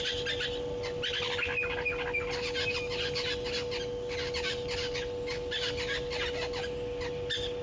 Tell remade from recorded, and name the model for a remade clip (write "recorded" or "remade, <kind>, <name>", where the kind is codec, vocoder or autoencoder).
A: recorded